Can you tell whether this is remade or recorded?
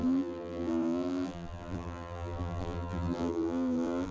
remade